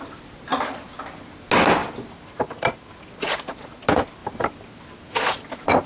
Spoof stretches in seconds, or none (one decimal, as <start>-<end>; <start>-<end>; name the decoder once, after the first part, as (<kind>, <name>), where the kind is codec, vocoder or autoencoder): 1.8-2.8 (vocoder, BigVGAN v2)